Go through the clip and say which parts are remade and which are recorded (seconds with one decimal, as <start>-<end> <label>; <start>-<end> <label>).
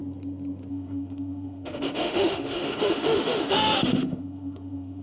0.0-0.7 recorded; 0.7-5.0 remade